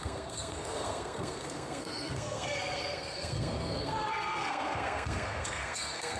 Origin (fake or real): fake